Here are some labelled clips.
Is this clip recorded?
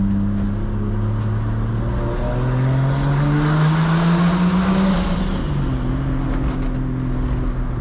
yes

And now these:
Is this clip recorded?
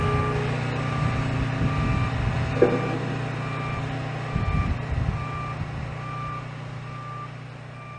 yes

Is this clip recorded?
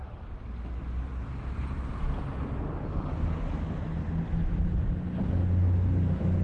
yes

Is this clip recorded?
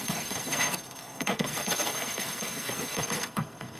no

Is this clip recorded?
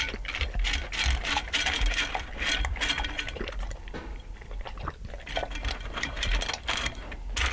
yes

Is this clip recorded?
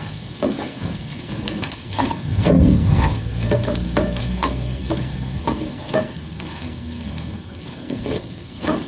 no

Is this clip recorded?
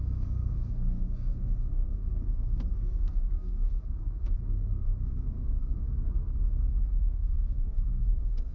no